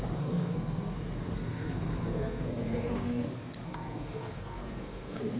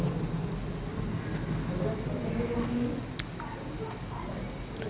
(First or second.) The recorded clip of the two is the second